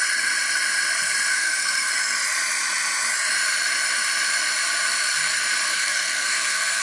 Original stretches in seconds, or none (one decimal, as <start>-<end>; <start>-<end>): 0.0-1.3; 1.9-5.7